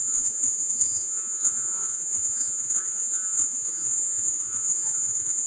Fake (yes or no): yes